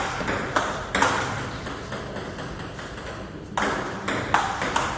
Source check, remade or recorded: remade